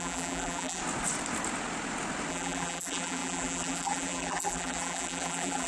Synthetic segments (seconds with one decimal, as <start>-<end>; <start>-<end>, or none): 0.0-0.8; 2.3-5.7

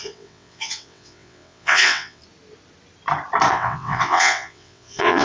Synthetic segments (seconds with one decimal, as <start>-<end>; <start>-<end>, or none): 0.0-2.2; 3.5-5.2